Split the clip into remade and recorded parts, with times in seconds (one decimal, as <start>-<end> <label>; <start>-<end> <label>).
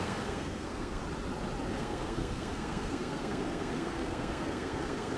0.0-1.0 remade; 1.0-1.7 recorded; 1.7-5.2 remade